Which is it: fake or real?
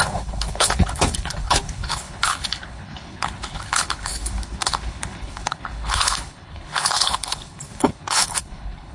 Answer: fake